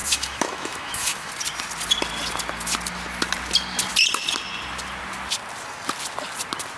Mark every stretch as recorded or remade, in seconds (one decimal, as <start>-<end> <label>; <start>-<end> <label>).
0.0-1.3 remade; 1.3-6.8 recorded